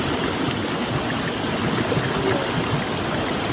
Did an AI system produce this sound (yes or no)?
no